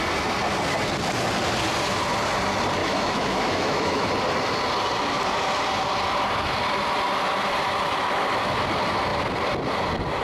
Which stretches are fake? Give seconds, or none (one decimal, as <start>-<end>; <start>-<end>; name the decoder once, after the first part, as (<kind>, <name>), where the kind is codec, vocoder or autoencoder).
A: 2.8-4.1 (autoencoder, DAC-VAE)